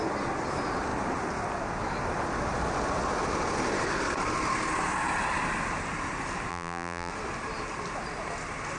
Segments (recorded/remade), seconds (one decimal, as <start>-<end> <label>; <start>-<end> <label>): 0.0-6.5 recorded; 6.5-7.1 remade; 7.1-8.8 recorded